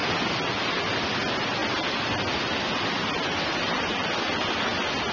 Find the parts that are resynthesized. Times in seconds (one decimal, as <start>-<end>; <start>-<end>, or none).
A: none